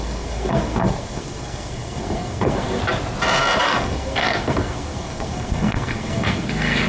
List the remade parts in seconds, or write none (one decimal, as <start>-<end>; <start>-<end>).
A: 0.0-2.8; 3.6-6.9